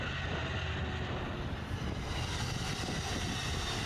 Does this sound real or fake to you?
real